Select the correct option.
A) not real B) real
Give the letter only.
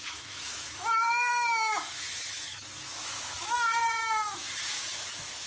A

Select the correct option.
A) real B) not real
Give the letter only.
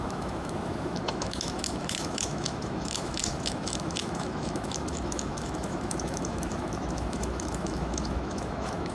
B